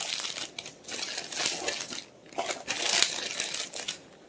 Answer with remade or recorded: recorded